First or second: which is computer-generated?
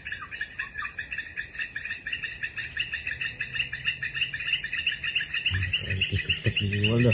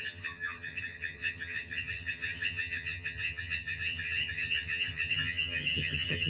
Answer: second